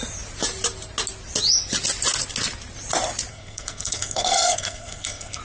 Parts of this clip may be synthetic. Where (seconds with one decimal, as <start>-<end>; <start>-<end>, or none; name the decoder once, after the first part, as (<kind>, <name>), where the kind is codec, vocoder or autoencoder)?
3.3-5.4 (codec, SNAC)